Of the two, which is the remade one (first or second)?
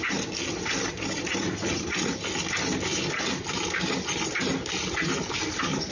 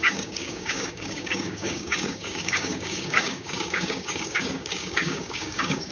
second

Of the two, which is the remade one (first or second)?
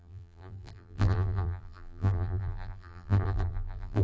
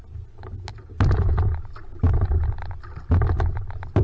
first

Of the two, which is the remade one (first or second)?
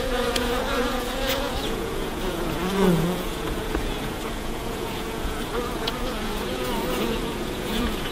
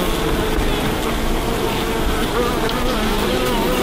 first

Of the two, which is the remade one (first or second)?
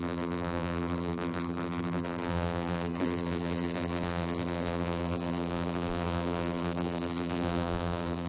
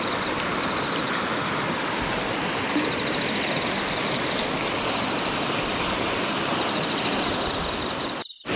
first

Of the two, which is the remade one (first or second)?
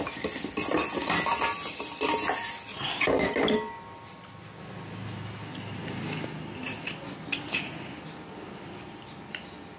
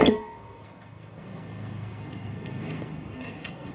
second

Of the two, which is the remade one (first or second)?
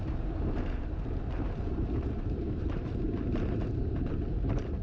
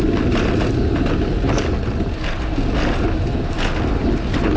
first